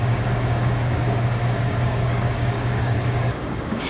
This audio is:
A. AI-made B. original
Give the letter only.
A